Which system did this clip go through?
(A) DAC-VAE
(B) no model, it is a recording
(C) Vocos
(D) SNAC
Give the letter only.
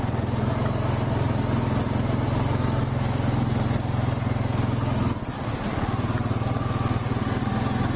B